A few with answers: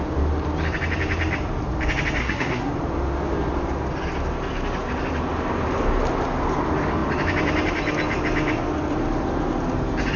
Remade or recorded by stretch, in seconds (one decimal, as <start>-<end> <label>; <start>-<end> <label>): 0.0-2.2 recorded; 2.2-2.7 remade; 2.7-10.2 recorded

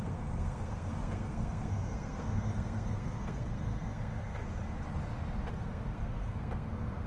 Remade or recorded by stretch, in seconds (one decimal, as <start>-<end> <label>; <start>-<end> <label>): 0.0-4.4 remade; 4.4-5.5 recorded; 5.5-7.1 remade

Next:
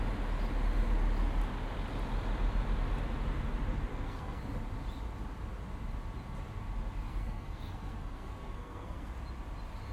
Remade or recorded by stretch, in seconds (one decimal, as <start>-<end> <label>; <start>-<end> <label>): 0.0-3.9 recorded; 3.9-4.4 remade; 4.4-7.1 recorded; 7.1-9.1 remade; 9.1-9.9 recorded

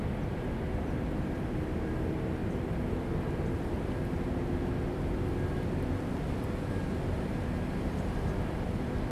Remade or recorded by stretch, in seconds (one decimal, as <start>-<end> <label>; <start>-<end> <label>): 0.0-9.1 recorded